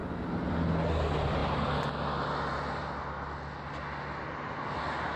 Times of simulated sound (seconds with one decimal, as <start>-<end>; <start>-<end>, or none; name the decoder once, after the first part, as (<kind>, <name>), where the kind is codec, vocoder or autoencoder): none